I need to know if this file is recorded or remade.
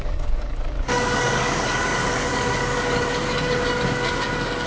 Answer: remade